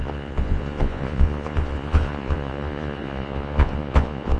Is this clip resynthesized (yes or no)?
yes